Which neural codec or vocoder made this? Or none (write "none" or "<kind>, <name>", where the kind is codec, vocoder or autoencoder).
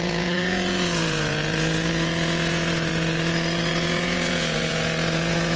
vocoder, Vocos